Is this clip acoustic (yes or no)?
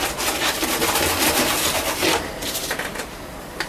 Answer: yes